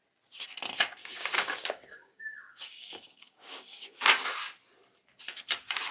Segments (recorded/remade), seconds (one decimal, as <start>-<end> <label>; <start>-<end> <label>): 0.0-1.0 recorded; 1.0-4.4 remade; 4.4-5.9 recorded